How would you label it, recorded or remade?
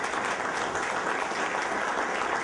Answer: recorded